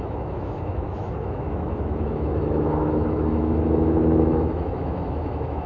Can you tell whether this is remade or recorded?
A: remade